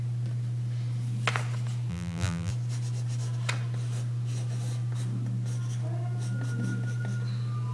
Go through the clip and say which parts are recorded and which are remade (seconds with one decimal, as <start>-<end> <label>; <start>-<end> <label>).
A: 0.0-1.9 recorded; 1.9-2.5 remade; 2.5-7.7 recorded